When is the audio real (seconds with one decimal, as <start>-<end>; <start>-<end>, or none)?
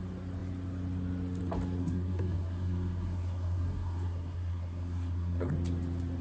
0.0-1.8; 5.5-6.2